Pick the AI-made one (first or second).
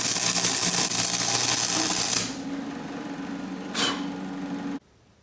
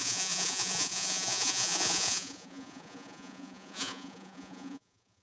second